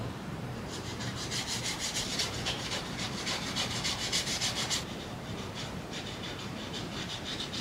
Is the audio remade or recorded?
remade